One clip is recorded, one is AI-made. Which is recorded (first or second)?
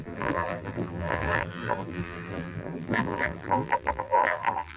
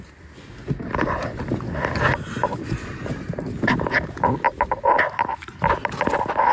second